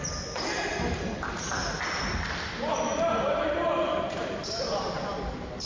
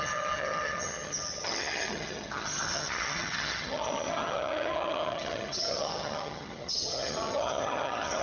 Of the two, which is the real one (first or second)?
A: first